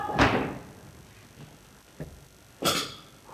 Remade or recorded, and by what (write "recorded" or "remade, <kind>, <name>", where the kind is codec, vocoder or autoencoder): recorded